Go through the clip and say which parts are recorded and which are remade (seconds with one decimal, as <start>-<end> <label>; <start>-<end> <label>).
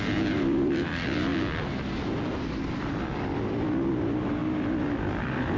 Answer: 0.0-1.3 remade; 1.3-2.8 recorded; 2.8-5.6 remade